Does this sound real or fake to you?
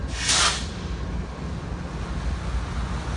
real